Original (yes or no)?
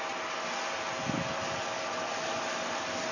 yes